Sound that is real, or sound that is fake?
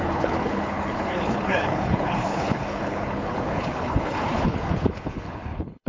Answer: fake